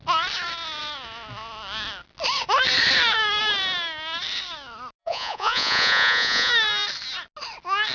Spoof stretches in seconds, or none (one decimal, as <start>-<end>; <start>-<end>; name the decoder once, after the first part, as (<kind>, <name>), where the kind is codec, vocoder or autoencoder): 5.0-6.5 (vocoder, Vocos)